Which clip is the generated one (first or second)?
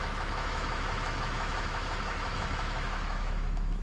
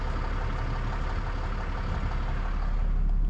first